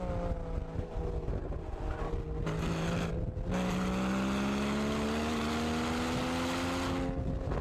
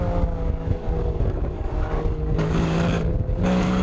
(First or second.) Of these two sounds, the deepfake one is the second